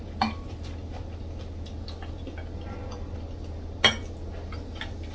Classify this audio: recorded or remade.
recorded